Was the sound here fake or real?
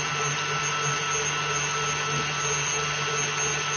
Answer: real